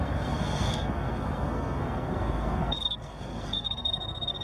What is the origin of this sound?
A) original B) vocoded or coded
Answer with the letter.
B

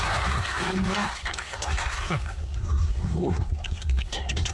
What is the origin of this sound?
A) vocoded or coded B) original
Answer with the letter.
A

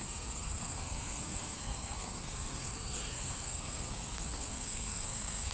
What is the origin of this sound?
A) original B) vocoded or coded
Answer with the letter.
B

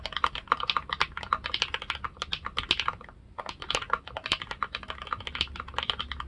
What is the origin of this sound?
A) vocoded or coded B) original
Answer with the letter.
B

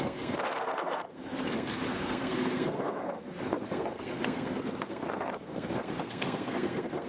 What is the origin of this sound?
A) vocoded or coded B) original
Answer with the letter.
A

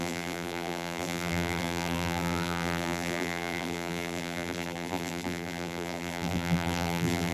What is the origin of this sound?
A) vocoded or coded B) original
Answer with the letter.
A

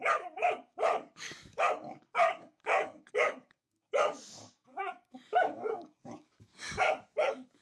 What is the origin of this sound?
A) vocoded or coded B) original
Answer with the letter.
A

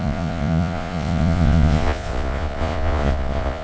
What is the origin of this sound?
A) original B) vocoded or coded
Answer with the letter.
B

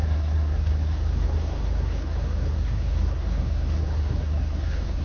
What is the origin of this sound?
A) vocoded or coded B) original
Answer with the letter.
A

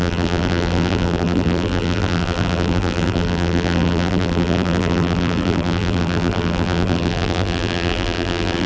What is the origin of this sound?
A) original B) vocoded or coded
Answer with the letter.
B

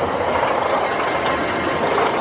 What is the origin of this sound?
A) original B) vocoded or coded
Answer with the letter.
A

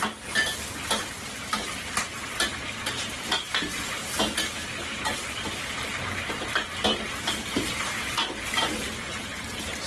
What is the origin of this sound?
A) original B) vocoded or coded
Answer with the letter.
A